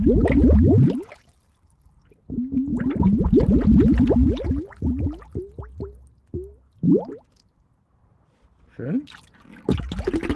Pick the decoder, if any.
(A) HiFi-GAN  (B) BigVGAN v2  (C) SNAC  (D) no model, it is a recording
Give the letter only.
D